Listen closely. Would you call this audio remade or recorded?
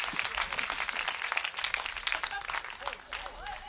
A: recorded